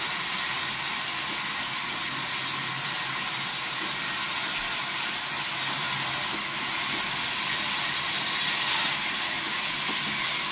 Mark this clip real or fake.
real